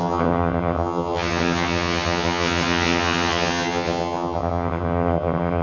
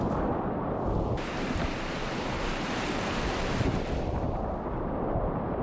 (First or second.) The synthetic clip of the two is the first